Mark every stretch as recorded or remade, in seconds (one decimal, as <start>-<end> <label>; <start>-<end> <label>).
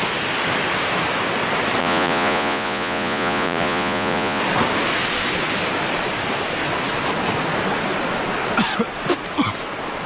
0.0-1.8 recorded; 1.8-4.4 remade; 4.4-10.1 recorded